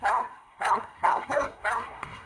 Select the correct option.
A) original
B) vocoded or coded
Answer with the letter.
B